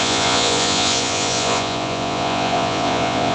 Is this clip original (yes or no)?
no